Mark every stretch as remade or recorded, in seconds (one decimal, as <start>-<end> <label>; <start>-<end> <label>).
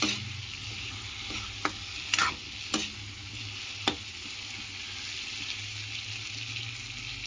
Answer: 0.0-7.3 recorded